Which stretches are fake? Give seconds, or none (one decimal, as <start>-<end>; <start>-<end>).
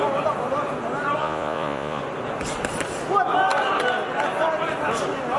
1.2-2.0